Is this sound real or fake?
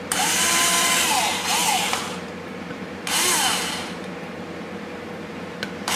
fake